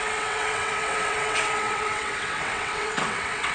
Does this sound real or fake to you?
fake